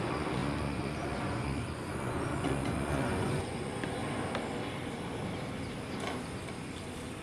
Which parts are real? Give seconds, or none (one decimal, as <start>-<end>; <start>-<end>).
4.0-7.2

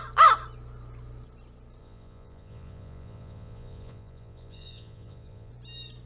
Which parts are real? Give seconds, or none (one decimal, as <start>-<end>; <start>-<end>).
0.0-1.8; 5.5-6.1

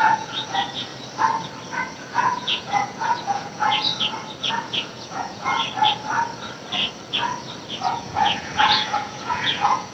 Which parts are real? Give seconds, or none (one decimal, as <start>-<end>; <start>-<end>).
0.9-1.8; 3.9-4.5; 5.5-7.9